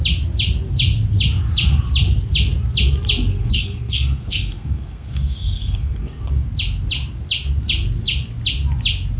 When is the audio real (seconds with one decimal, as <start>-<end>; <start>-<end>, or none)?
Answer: 0.0-3.3; 6.2-9.2